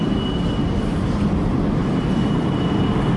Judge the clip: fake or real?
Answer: fake